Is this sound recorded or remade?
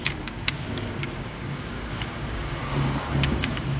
remade